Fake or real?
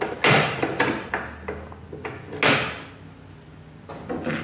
real